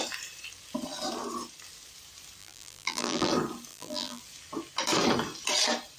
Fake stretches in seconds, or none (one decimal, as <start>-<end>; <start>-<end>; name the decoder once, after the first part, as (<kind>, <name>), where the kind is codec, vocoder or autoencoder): 2.4-3.3 (vocoder, BigVGAN v2); 3.7-4.2